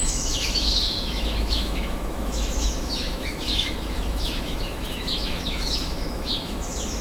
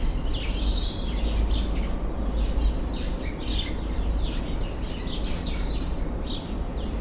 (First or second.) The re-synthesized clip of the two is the first